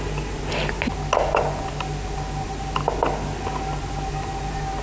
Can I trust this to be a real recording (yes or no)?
yes